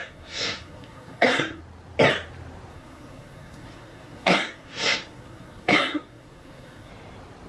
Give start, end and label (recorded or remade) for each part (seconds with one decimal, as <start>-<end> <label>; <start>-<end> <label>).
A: 0.0-1.6 remade; 1.6-2.7 recorded; 2.7-6.9 remade; 6.9-7.5 recorded